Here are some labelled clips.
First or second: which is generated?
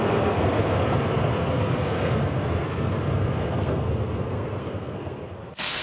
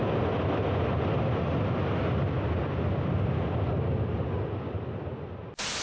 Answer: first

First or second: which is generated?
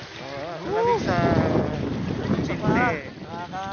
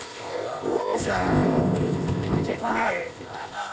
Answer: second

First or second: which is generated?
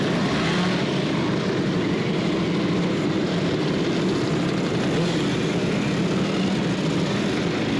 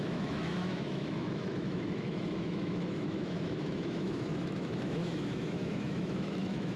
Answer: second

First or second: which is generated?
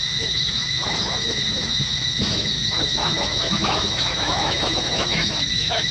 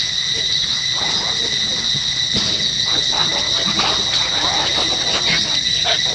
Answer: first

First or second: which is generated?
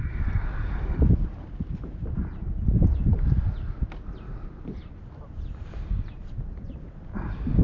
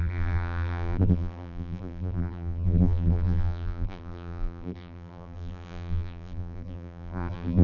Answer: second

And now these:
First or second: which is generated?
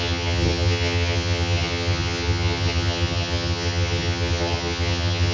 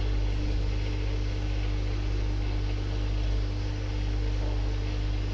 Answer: first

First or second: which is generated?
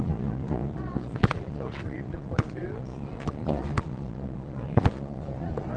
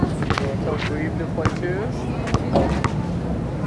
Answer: first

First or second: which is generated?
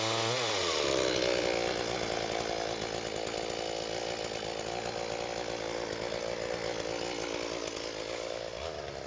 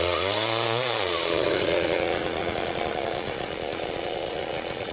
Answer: second